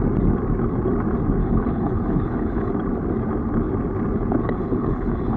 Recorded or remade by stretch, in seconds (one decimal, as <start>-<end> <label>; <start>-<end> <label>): 0.0-1.4 recorded; 1.4-2.7 remade; 2.7-4.4 recorded; 4.4-5.4 remade